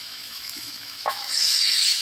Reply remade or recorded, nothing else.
remade